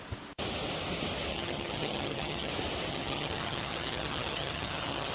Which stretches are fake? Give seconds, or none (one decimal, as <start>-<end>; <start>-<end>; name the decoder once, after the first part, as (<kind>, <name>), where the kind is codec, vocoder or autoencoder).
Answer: 1.3-2.5 (vocoder, HiFi-GAN); 2.9-5.1